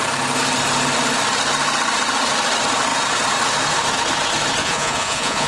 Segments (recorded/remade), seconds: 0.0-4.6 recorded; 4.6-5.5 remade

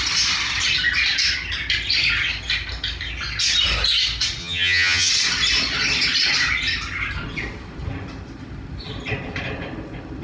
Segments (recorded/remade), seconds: 0.0-4.4 recorded; 4.4-5.1 remade; 5.1-10.2 recorded

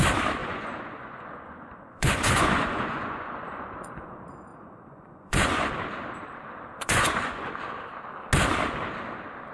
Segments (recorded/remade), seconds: 0.0-0.4 recorded; 0.4-4.0 remade; 4.0-4.5 recorded; 4.5-5.7 remade; 5.7-6.8 recorded; 6.8-7.5 remade; 7.5-9.5 recorded

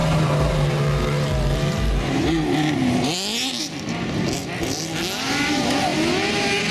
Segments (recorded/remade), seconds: 0.0-3.1 remade; 3.1-6.7 recorded

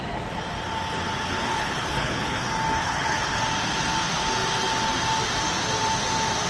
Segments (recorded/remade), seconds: 0.0-1.4 recorded; 1.4-2.4 remade; 2.4-2.8 recorded; 2.8-3.4 remade; 3.4-6.5 recorded